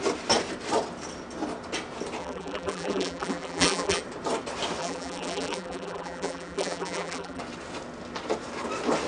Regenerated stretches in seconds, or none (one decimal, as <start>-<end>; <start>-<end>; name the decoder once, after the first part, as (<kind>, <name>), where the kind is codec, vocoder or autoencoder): 2.2-4.0 (vocoder, BigVGAN v2); 4.8-7.4